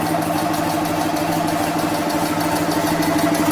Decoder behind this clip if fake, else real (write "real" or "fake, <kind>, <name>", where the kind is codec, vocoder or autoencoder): real